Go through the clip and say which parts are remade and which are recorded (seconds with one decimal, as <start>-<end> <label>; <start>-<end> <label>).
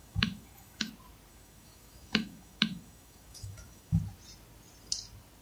0.0-0.9 remade; 0.9-1.3 recorded; 1.3-4.0 remade; 4.0-5.4 recorded